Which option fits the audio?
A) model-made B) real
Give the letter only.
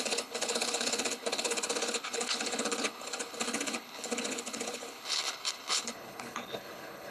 A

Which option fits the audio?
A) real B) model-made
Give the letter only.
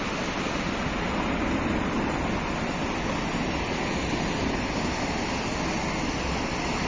A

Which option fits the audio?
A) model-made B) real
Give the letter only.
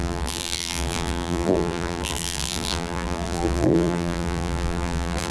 A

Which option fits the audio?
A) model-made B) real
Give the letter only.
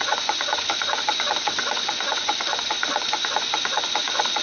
A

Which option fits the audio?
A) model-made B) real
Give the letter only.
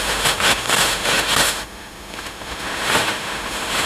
A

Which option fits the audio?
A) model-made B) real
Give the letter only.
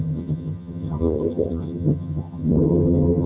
A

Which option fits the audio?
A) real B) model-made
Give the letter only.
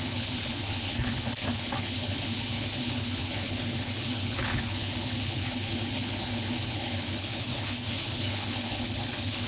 B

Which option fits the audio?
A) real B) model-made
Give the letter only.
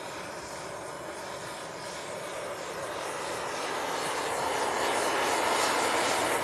A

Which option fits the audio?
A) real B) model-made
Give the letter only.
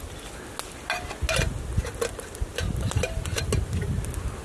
A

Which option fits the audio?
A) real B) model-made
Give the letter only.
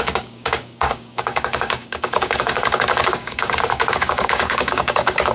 B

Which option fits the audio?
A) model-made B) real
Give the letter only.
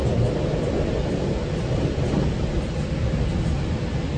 B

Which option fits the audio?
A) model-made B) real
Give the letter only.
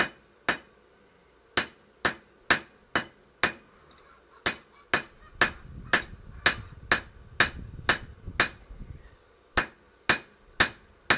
B